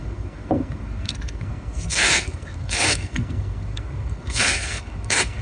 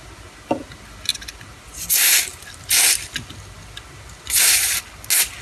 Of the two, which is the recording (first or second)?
second